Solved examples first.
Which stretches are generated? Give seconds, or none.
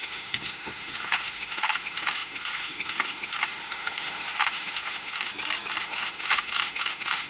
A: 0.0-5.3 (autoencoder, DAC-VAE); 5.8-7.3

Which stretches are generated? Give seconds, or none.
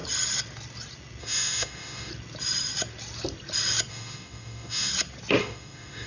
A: 1.2-2.1 (autoencoder, DAC-VAE); 3.9-4.9; 5.4-6.1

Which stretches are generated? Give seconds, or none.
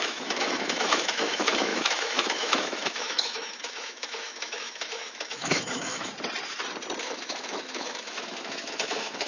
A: 0.0-6.1 (autoencoder, DAC-VAE); 7.0-9.3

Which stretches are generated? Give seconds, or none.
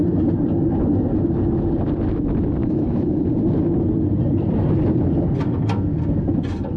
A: 2.6-3.2 (autoencoder, DAC-VAE)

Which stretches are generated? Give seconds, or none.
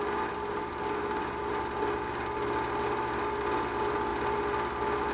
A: none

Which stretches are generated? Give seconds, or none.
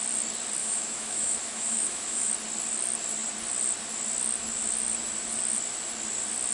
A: 0.6-2.3 (autoencoder, DAC-VAE)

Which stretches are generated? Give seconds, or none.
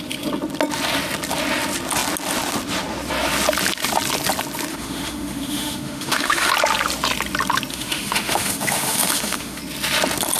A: 4.7-6.5 (autoencoder, DAC-VAE); 7.7-9.6